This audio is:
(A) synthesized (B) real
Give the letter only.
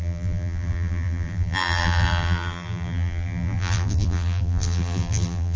A